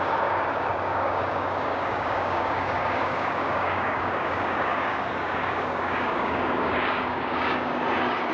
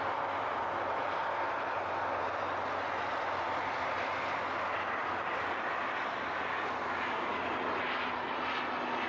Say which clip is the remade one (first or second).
first